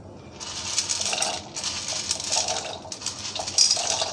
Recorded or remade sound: recorded